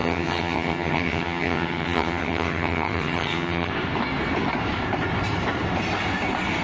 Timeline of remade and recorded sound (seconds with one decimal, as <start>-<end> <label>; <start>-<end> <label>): 0.0-3.7 remade; 3.7-6.6 recorded